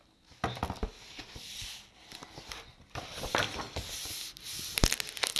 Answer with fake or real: real